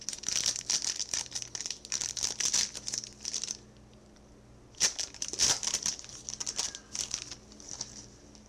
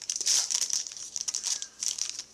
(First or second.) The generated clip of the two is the second